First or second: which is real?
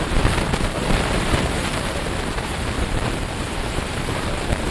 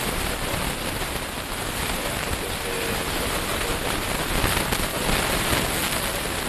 second